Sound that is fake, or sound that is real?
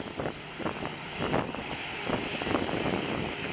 real